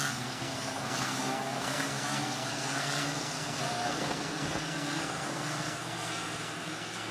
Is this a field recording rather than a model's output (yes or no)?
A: no